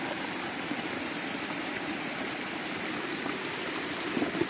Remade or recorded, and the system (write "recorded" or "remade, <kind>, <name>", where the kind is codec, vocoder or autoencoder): recorded